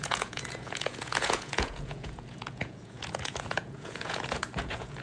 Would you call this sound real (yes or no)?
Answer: no